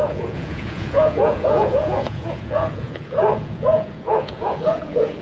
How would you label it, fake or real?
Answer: fake